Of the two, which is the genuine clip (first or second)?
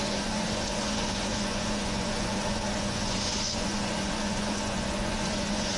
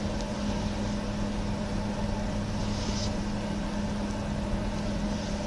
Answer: second